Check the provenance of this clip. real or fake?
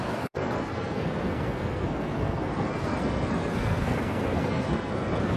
fake